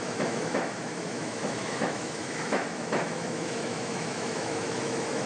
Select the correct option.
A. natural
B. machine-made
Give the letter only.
B